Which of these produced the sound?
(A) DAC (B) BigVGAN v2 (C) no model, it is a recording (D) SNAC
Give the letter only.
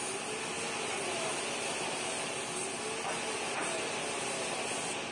C